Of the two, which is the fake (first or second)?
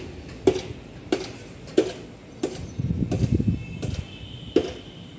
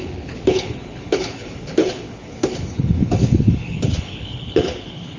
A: second